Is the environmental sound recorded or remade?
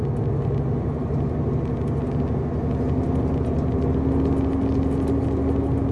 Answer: recorded